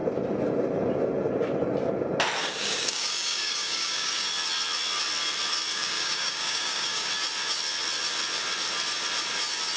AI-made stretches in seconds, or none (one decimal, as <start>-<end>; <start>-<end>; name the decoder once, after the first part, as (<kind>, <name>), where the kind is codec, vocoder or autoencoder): 2.4-4.3 (codec, DAC); 5.7-7.1